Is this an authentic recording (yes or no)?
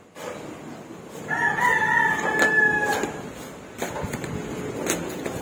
yes